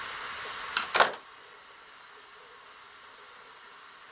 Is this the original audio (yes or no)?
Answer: yes